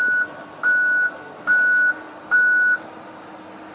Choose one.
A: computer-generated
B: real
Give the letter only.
B